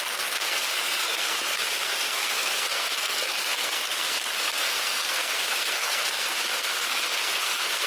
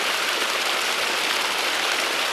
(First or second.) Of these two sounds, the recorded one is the second